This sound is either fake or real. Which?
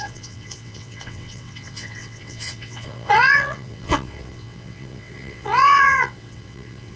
fake